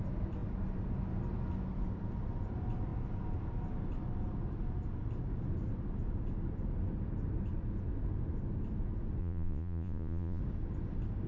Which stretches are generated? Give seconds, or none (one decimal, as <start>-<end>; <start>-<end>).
9.2-10.4